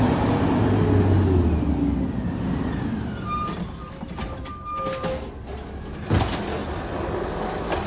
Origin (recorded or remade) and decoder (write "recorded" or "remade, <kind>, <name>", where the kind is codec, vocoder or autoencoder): recorded